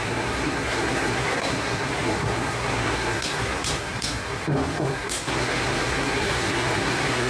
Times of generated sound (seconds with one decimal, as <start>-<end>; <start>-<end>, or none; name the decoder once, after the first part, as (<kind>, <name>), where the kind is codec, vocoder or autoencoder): 0.0-7.3 (codec, SNAC)